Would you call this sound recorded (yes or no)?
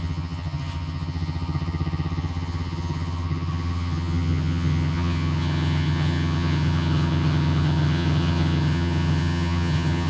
no